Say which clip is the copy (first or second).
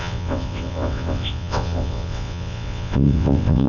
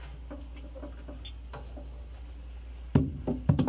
first